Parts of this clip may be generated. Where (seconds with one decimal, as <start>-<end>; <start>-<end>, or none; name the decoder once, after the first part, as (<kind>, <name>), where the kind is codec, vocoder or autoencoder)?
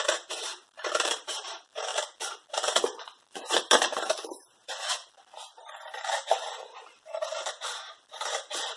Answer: 0.0-1.9 (vocoder, BigVGAN v2); 2.5-5.0; 5.7-8.8